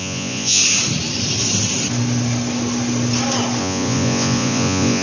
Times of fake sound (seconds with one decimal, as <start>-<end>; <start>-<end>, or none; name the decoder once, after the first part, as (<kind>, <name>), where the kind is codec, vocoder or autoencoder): 0.0-0.6 (vocoder, Vocos); 3.6-5.0